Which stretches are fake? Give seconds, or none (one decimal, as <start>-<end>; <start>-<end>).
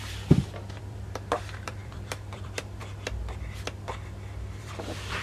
0.0-2.8; 4.6-5.2